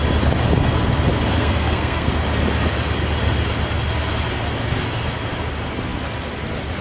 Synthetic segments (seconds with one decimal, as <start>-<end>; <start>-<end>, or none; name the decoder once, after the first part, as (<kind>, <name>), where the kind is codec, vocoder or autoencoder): 1.4-2.1 (codec, SNAC)